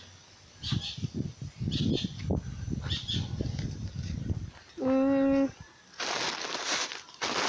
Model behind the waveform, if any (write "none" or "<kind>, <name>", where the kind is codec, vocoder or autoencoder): none